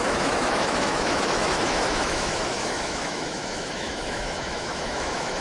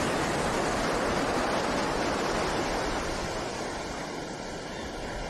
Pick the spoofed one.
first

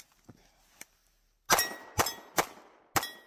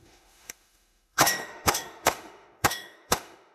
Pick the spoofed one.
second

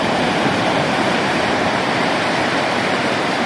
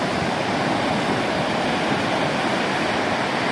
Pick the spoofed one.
first